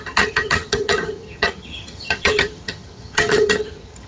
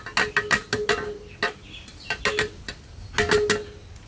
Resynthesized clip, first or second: first